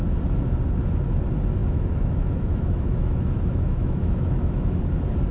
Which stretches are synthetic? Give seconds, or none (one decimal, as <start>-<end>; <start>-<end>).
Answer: 1.6-4.8